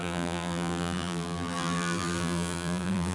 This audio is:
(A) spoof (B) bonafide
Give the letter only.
A